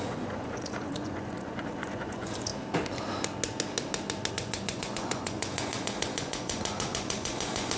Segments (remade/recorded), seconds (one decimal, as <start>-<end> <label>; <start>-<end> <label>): 0.0-2.5 remade; 2.5-4.3 recorded; 4.3-7.8 remade